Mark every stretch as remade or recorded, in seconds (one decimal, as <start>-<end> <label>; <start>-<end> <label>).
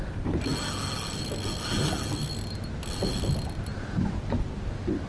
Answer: 0.0-5.1 recorded